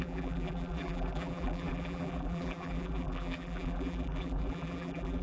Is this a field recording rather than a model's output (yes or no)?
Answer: no